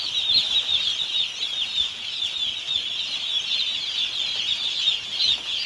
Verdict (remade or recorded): recorded